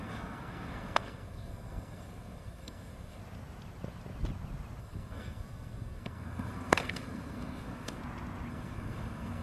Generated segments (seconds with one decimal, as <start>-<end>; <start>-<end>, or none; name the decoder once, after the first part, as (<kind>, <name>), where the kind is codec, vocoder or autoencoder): 0.0-3.2 (codec, SNAC); 4.8-8.0; 8.5-9.4